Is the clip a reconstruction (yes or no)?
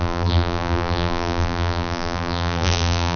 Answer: yes